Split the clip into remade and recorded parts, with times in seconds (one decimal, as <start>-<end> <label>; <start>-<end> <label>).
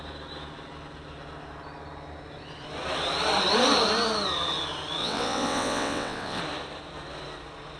0.0-5.0 recorded; 5.0-6.4 remade; 6.4-7.8 recorded